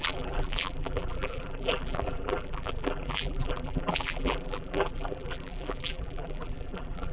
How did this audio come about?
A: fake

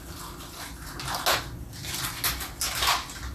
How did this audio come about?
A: real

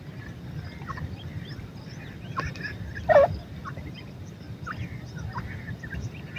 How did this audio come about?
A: real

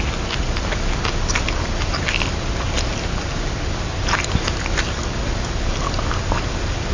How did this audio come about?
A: real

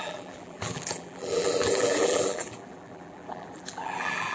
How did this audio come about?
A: fake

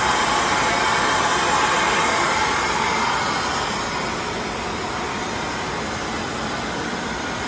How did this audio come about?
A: real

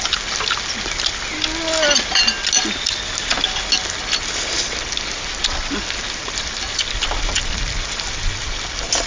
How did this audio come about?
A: real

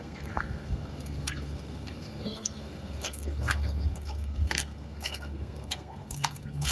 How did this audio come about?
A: fake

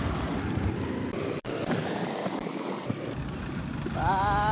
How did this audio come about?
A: real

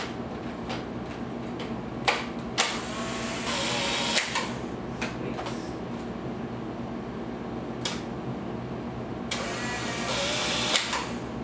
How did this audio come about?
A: real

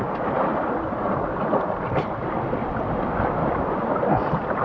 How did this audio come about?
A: real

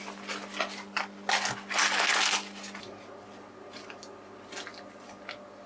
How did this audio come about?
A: real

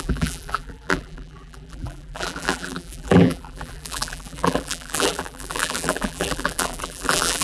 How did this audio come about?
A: fake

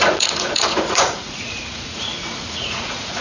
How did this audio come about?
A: fake